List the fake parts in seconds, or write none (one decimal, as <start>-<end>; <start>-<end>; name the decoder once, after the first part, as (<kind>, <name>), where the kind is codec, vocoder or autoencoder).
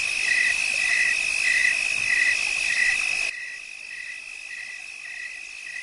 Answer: none